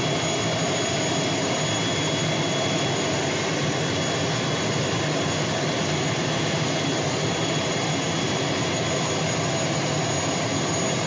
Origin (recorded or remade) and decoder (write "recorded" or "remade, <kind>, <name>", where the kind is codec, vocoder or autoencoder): recorded